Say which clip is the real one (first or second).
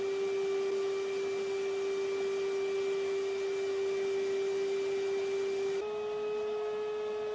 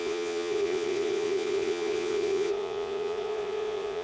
first